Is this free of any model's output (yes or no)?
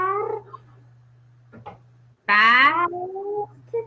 yes